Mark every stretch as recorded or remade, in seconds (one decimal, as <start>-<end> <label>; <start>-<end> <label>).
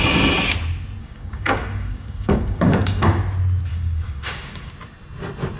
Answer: 0.0-1.0 recorded; 1.0-3.2 remade; 3.2-3.7 recorded; 3.7-4.7 remade; 4.7-5.6 recorded